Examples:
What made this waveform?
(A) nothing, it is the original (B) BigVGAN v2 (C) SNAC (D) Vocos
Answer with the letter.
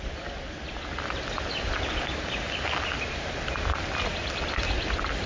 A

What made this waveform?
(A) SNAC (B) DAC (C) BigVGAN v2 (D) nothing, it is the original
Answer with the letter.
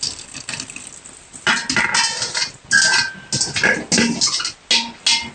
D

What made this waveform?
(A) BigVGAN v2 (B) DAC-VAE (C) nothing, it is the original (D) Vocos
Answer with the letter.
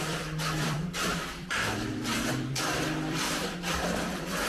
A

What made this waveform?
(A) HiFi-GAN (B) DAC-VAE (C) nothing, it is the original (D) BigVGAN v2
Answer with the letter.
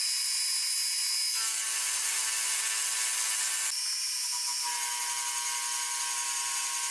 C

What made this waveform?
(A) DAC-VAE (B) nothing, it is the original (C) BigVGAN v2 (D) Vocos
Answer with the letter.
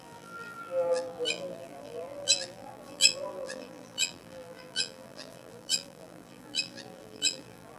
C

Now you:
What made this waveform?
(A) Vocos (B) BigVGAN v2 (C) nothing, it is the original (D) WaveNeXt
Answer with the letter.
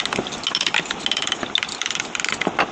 C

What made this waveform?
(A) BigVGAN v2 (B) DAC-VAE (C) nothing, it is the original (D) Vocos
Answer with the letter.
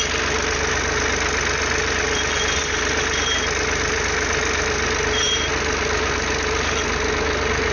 C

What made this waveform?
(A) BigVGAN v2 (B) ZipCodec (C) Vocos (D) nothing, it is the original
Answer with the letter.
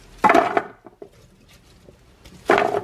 D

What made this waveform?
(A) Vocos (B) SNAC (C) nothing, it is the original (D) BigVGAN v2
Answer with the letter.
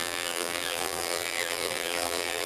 D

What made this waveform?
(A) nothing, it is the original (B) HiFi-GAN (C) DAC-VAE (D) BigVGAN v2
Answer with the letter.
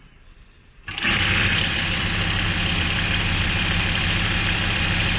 D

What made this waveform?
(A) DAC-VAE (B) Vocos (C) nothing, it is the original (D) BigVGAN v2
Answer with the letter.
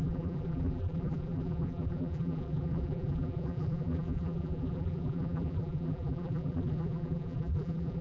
D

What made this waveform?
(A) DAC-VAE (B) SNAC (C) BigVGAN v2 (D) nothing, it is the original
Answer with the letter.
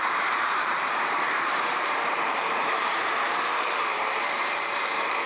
C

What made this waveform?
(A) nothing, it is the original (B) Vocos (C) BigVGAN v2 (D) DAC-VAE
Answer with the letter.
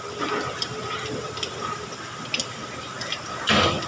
A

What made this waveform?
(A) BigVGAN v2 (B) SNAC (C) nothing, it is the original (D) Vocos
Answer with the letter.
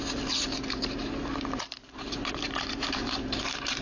A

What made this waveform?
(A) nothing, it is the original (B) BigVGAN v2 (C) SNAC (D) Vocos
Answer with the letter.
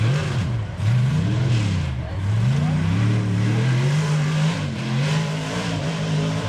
B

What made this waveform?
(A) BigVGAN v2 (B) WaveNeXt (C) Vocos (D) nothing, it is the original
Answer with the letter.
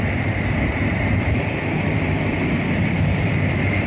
A